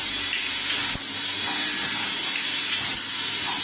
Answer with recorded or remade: recorded